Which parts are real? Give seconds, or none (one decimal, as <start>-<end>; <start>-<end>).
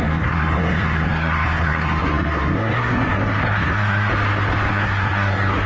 4.1-4.7